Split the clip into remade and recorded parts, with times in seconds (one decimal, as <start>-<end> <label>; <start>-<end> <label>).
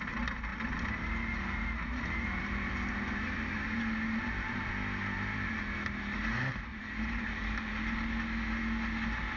0.0-0.5 recorded; 0.5-4.7 remade; 4.7-6.7 recorded; 6.7-7.7 remade; 7.7-9.4 recorded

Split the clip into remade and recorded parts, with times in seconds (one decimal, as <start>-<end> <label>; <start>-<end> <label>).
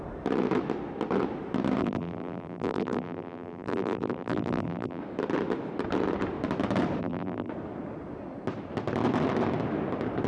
0.0-1.8 recorded; 1.8-5.0 remade; 5.0-7.0 recorded; 7.0-7.5 remade; 7.5-10.3 recorded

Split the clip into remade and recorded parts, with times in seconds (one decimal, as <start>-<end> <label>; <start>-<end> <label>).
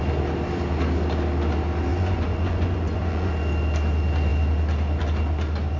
0.0-1.9 recorded; 1.9-3.3 remade; 3.3-5.8 recorded